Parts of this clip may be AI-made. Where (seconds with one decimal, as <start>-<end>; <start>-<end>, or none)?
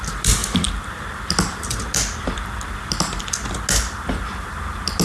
none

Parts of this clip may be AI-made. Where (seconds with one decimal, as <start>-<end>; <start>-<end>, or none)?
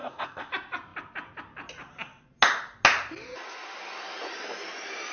0.0-0.5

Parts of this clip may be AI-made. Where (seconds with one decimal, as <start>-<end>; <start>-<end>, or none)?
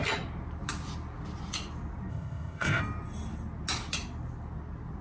2.1-2.8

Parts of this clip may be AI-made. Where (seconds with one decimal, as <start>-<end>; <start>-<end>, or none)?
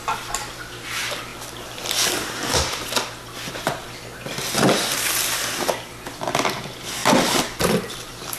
7.0-8.4